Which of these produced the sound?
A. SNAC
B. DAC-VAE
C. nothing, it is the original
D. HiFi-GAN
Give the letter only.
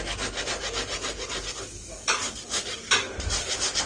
C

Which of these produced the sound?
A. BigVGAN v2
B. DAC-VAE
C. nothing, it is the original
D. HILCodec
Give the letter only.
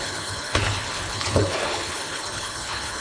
D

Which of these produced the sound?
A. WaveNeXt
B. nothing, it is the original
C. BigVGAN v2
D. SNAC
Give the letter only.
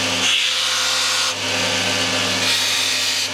B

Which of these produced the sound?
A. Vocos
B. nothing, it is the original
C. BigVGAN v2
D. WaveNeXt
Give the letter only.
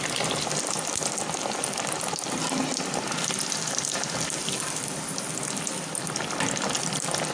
B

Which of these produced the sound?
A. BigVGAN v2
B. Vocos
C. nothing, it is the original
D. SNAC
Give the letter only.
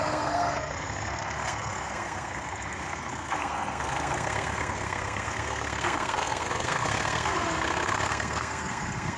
D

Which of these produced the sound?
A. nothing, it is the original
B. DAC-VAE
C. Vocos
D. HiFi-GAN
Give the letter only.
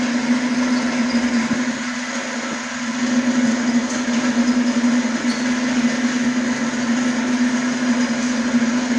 A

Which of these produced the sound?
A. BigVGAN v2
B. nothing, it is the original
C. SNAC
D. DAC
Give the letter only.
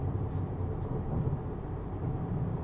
B